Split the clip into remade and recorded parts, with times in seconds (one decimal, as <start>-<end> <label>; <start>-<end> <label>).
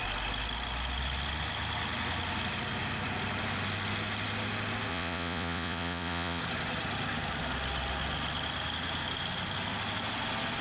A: 0.0-4.9 recorded; 4.9-6.4 remade; 6.4-10.6 recorded